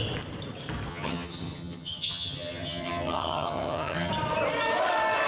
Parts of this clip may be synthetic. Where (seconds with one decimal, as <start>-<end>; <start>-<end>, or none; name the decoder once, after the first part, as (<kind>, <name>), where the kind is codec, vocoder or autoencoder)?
0.9-4.1 (vocoder, HiFi-GAN)